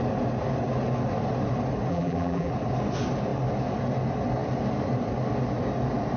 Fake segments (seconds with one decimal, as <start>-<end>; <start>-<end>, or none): 1.9-2.5